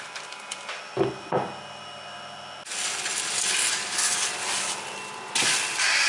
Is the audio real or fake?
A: real